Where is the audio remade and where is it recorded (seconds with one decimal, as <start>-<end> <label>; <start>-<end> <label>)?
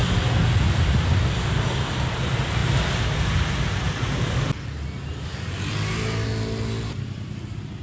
0.0-7.8 recorded